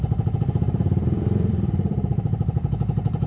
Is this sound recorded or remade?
remade